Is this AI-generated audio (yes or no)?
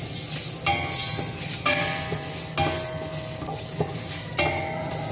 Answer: no